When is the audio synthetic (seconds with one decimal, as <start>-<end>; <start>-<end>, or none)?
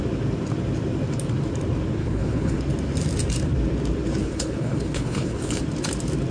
2.0-2.6; 4.2-5.6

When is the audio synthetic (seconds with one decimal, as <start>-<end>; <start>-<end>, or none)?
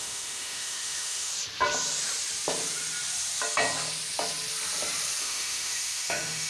0.0-1.3; 5.2-6.5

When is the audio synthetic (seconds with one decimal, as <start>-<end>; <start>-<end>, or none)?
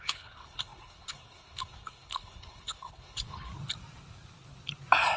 0.0-3.5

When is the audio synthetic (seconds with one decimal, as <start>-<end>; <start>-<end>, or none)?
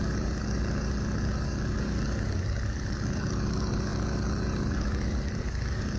0.0-6.0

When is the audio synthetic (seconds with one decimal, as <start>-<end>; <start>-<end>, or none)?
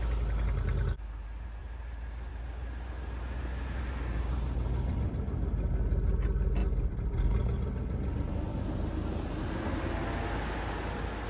none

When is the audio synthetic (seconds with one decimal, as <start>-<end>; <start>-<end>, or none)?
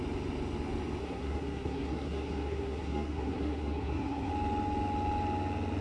1.0-4.3